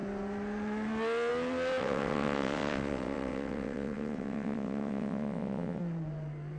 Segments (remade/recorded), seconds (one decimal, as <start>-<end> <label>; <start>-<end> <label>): 0.0-1.8 recorded; 1.8-5.8 remade; 5.8-6.6 recorded